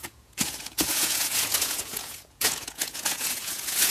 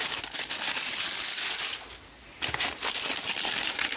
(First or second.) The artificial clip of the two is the first